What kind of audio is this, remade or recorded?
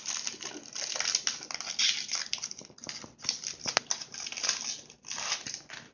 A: recorded